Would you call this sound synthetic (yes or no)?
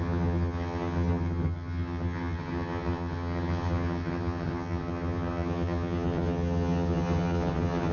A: yes